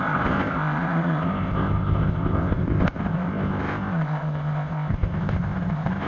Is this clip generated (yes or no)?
yes